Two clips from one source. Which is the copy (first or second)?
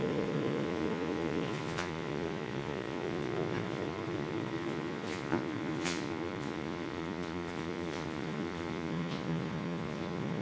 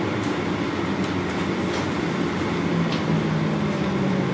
first